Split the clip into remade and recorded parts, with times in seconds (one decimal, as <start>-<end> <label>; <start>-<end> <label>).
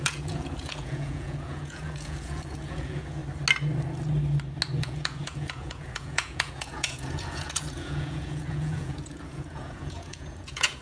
0.0-3.2 remade; 3.2-4.8 recorded; 4.8-10.8 remade